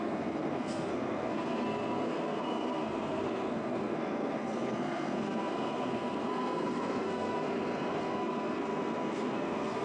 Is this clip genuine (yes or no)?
no